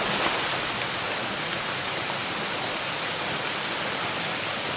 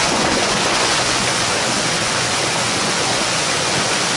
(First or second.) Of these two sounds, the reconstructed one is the second